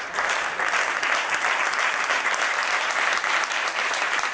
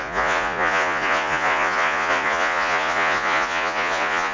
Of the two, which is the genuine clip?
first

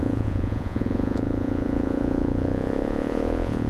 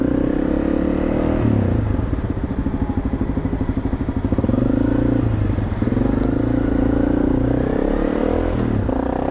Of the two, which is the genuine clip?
second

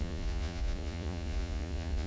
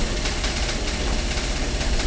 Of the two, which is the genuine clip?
second